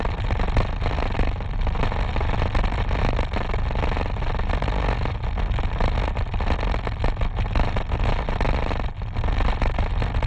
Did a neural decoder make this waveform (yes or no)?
no